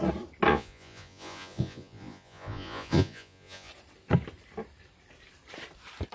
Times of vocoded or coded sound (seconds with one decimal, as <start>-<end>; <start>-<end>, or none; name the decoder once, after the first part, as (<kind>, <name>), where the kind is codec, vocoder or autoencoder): 0.5-3.7 (vocoder, Vocos)